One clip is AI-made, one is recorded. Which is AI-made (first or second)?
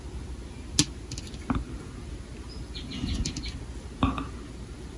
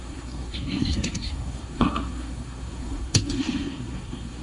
second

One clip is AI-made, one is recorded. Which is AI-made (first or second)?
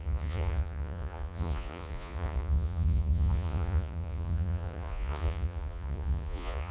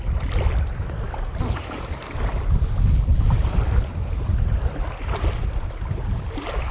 first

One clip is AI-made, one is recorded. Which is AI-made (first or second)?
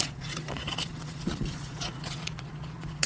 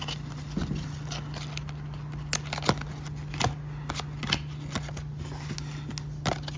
first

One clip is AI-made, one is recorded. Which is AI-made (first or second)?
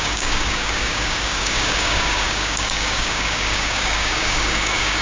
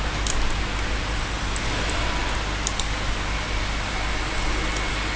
first